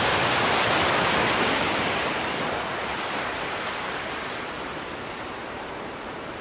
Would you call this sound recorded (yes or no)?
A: yes